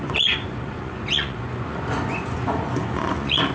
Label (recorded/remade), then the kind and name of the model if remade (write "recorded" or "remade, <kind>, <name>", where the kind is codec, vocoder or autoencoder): remade, vocoder, Vocos